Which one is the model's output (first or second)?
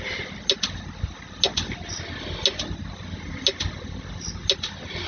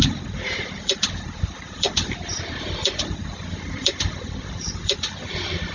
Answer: second